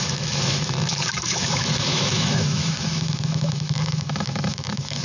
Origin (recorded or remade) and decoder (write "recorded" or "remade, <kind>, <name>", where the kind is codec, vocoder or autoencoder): remade, autoencoder, DAC-VAE